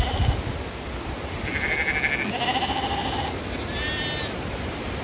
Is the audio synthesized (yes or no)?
no